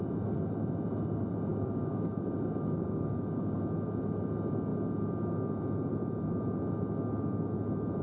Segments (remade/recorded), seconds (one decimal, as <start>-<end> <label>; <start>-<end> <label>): 0.0-1.5 recorded; 1.5-3.6 remade; 3.6-8.0 recorded